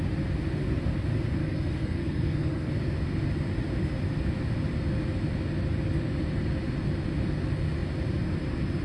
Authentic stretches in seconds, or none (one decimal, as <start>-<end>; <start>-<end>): 0.0-1.4; 2.7-8.8